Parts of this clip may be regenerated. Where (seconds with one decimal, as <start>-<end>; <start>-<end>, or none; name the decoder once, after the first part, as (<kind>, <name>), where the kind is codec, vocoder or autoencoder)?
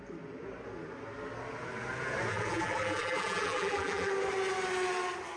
2.3-4.1 (vocoder, BigVGAN v2)